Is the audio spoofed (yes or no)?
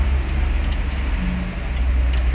no